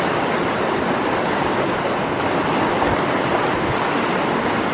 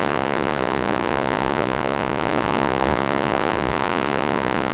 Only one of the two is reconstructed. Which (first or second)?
second